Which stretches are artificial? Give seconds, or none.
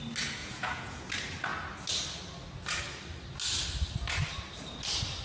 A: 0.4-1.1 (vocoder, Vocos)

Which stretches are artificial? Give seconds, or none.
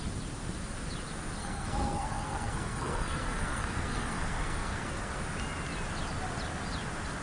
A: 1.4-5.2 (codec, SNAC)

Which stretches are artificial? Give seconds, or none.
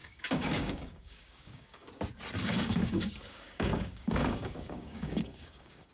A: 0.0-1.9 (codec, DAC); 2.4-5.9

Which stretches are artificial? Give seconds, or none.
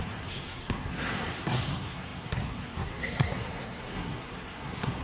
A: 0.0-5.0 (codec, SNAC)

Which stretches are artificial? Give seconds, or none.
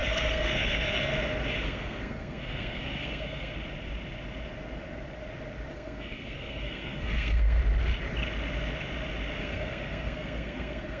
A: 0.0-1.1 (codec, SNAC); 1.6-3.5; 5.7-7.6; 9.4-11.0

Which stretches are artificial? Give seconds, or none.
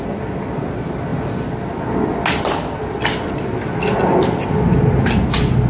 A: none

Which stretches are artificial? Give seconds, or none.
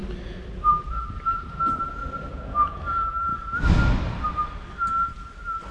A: 2.3-2.8 (vocoder, Vocos)